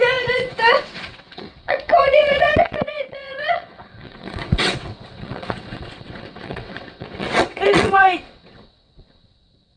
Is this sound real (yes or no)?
no